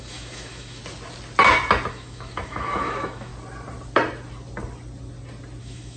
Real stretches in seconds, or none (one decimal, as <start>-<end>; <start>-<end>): 0.8-1.9; 3.3-5.6